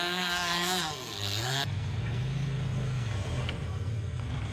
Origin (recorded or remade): remade